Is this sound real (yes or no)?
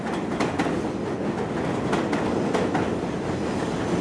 yes